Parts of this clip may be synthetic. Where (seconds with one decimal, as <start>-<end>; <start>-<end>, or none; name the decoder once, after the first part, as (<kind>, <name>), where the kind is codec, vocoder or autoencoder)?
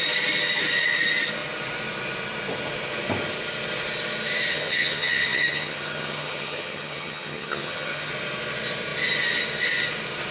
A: 4.5-8.1 (vocoder, HiFi-GAN)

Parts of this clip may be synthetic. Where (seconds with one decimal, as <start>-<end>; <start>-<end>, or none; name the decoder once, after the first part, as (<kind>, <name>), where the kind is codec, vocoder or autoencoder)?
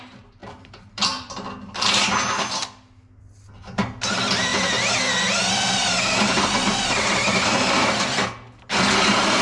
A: 0.4-2.4 (vocoder, BigVGAN v2)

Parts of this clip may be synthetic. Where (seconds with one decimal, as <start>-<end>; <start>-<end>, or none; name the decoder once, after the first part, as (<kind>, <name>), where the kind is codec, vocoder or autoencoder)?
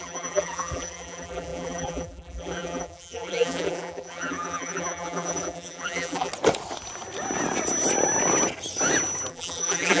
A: 0.0-6.3 (vocoder, BigVGAN v2); 9.3-10.0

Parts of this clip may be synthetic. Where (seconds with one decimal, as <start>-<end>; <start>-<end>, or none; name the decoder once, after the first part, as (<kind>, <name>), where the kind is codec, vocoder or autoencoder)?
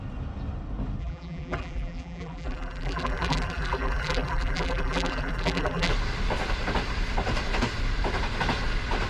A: 1.0-5.9 (vocoder, BigVGAN v2)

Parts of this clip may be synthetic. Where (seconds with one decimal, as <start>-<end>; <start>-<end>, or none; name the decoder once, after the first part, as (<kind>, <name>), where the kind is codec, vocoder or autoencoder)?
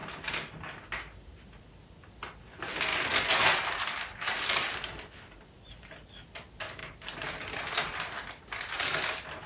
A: none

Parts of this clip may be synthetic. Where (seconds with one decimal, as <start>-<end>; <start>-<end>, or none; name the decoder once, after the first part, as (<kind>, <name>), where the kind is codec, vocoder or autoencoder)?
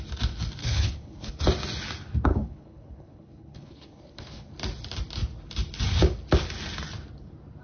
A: 0.6-1.3 (codec, HILCodec); 2.3-4.5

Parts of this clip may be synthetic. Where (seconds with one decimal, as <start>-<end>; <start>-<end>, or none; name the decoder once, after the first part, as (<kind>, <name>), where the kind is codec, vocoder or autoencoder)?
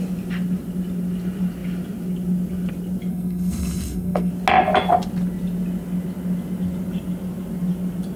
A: 3.1-4.3 (codec, SNAC)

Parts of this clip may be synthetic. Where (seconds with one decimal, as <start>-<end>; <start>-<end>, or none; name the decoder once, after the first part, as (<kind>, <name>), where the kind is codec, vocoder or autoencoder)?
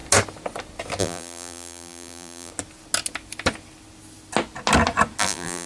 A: 1.0-2.5 (vocoder, BigVGAN v2); 5.2-5.7